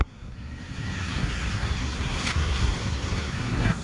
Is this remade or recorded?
remade